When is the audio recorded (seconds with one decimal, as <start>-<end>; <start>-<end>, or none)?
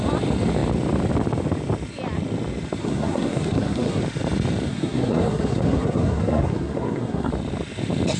0.0-2.8; 4.0-4.7; 7.3-8.2